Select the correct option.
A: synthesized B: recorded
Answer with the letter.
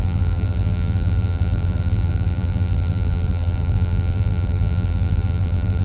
A